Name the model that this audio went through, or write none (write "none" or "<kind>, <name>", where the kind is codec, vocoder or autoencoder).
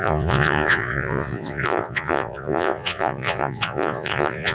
vocoder, Vocos